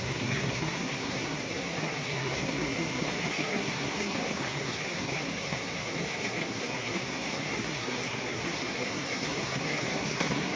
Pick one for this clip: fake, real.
fake